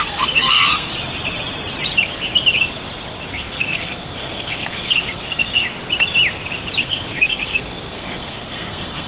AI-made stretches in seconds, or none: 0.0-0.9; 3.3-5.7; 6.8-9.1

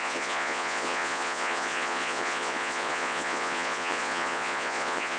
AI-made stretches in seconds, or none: 0.0-5.2